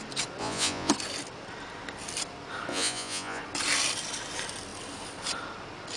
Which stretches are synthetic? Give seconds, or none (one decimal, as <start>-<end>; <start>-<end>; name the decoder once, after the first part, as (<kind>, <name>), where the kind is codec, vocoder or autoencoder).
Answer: 0.4-0.9 (vocoder, Vocos); 2.7-3.4